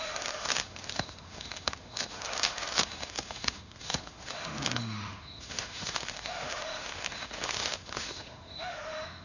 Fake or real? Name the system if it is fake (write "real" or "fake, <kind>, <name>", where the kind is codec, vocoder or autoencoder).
fake, autoencoder, DAC-VAE